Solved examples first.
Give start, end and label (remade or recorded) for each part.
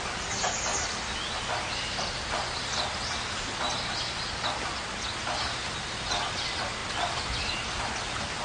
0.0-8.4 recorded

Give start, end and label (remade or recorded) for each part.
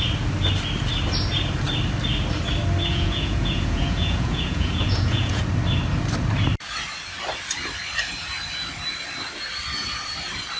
0.0-2.9 recorded; 2.9-5.4 remade; 5.4-10.6 recorded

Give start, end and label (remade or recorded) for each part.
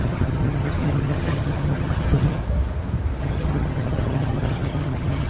0.0-2.4 remade; 2.4-3.2 recorded; 3.2-5.3 remade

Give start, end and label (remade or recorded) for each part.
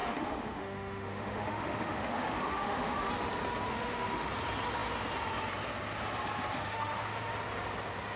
0.0-3.1 remade; 3.1-3.7 recorded; 3.7-4.3 remade; 4.3-6.5 recorded; 6.5-7.3 remade; 7.3-8.2 recorded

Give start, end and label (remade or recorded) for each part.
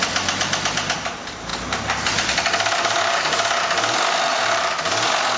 0.0-4.3 recorded; 4.3-4.8 remade; 4.8-5.4 recorded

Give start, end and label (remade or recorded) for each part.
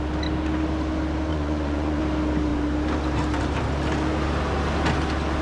0.0-1.3 recorded; 1.3-2.0 remade; 2.0-5.4 recorded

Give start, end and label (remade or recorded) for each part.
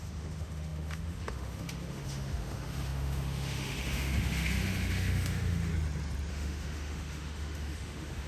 0.0-5.7 remade; 5.7-6.3 recorded; 6.3-8.3 remade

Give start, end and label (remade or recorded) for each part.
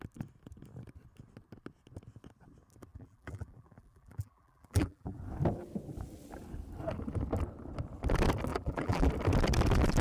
0.0-2.9 recorded; 2.9-5.2 remade; 5.2-8.5 recorded; 8.5-9.1 remade; 9.1-10.0 recorded